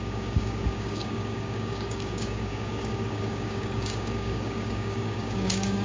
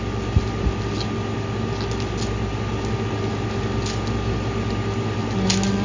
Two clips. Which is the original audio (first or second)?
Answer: second